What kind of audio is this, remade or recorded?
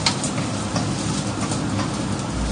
recorded